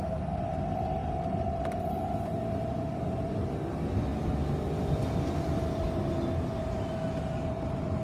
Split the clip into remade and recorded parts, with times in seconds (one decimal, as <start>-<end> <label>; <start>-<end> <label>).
0.0-1.0 recorded; 1.0-2.9 remade; 2.9-8.0 recorded